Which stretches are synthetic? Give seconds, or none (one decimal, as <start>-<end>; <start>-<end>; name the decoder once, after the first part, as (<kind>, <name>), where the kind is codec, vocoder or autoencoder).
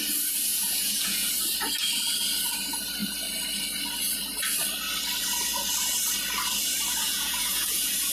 0.5-1.3 (vocoder, Vocos); 7.0-8.1